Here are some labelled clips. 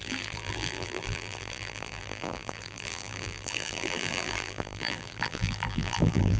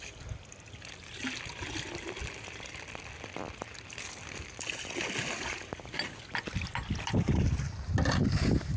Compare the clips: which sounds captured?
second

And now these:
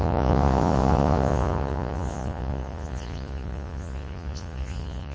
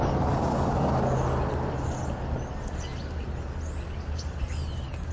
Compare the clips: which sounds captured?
second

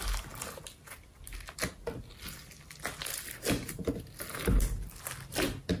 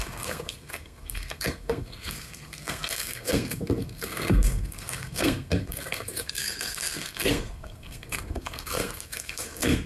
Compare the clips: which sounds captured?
first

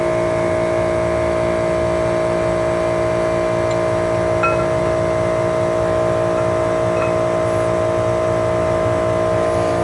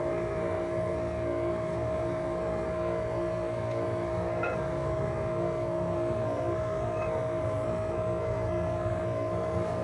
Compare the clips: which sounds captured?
first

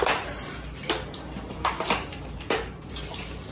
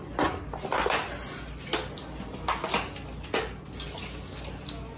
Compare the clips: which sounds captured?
second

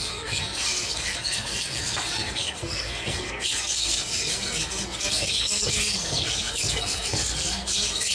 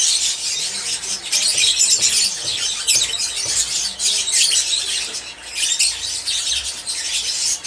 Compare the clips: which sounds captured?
second